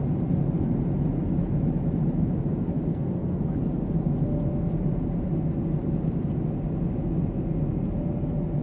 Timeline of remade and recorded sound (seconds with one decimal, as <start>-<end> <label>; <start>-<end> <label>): 0.0-2.9 recorded; 2.9-3.4 remade; 3.4-8.6 recorded